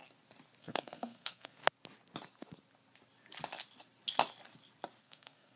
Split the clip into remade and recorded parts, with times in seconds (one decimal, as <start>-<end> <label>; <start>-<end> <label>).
0.0-0.6 recorded; 0.6-1.6 remade; 1.6-5.0 recorded; 5.0-5.6 remade